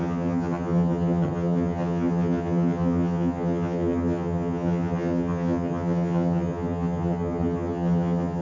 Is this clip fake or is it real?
fake